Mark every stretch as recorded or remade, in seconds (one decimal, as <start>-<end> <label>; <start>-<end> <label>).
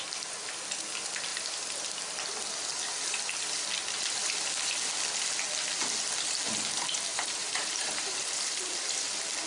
0.0-1.3 recorded; 1.3-2.0 remade; 2.0-7.1 recorded; 7.1-8.7 remade; 8.7-9.5 recorded